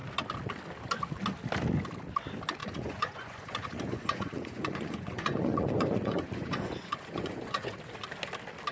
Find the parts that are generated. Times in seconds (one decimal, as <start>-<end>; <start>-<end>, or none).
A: 2.6-7.8